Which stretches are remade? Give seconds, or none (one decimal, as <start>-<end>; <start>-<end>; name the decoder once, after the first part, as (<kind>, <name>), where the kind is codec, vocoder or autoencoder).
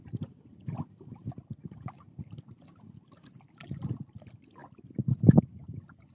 none